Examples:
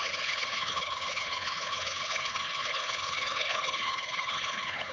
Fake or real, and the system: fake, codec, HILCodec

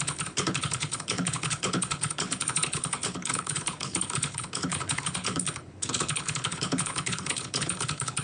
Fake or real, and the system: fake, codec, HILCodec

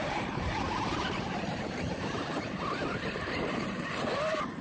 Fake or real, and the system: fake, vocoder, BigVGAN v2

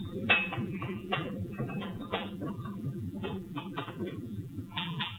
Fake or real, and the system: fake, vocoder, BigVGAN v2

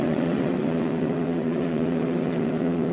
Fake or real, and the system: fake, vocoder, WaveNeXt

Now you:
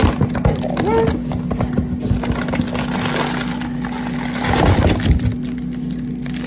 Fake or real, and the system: real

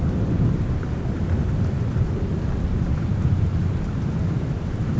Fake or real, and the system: real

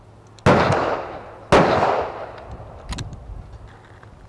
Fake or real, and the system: real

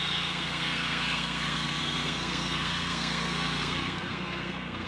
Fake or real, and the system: fake, codec, SNAC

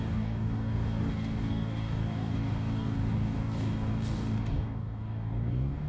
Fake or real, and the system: fake, codec, DAC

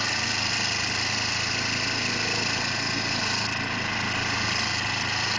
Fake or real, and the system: real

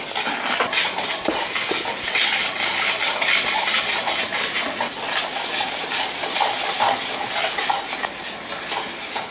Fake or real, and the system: real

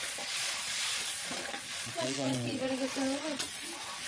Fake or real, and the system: fake, vocoder, Vocos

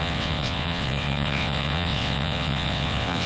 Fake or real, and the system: fake, vocoder, WaveNeXt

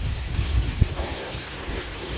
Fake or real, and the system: fake, codec, SNAC